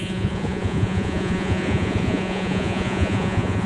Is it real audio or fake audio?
fake